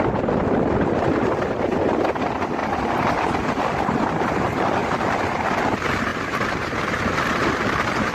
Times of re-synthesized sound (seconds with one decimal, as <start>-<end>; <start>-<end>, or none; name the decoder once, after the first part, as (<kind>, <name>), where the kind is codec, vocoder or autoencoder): 0.0-2.6 (vocoder, BigVGAN v2); 4.1-4.8; 5.6-8.1